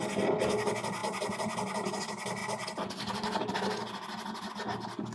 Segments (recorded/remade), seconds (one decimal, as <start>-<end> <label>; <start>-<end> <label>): 0.0-5.1 recorded